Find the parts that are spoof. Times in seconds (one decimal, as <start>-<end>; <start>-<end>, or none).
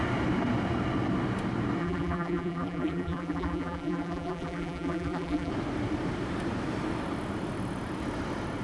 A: 1.8-5.5